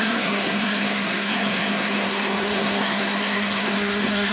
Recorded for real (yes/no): no